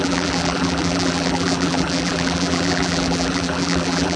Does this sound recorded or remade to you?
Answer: remade